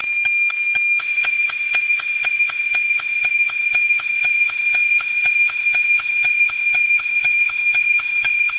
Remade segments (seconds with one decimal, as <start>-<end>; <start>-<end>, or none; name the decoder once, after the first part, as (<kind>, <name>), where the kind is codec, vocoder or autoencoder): 1.0-8.6 (autoencoder, DAC-VAE)